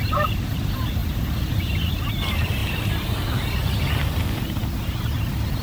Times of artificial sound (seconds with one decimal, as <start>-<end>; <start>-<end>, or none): none